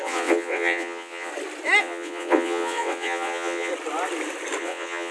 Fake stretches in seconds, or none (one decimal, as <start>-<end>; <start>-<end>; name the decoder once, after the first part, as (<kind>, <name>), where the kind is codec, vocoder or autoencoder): 0.0-1.3 (vocoder, WaveNeXt); 1.8-3.7; 4.6-5.1